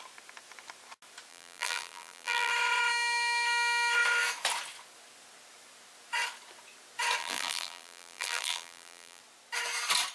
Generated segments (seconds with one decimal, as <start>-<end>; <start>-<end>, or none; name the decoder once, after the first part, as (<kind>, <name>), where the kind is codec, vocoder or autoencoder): 1.3-2.5 (vocoder, BigVGAN v2); 7.2-9.2